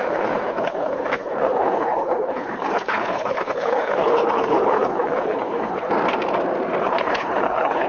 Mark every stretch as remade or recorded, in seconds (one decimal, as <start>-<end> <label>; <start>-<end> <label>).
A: 0.0-5.9 remade; 5.9-6.8 recorded; 6.8-7.9 remade